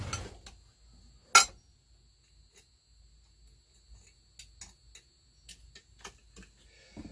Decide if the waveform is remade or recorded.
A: recorded